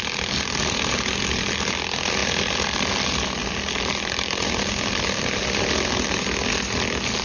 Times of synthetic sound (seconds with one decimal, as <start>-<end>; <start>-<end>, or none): none